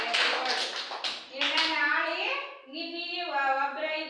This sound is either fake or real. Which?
real